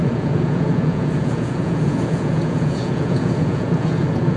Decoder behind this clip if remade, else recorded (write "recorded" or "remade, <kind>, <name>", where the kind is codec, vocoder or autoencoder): remade, vocoder, Vocos